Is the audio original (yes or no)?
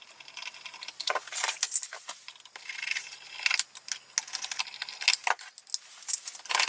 yes